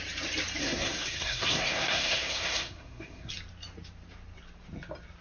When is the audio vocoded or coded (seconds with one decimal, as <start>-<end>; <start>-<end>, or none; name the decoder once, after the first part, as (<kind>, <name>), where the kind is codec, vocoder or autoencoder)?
0.6-3.3 (codec, SNAC)